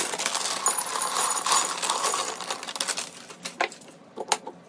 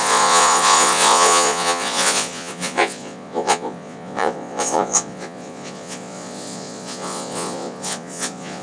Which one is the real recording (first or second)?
first